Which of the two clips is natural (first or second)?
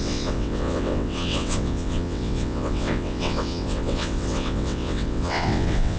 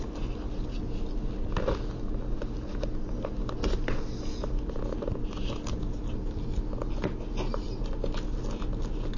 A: second